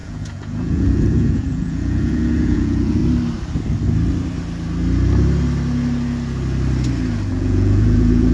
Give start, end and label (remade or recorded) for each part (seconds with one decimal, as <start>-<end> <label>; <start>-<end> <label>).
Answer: 0.0-3.0 remade; 3.0-7.3 recorded; 7.3-8.3 remade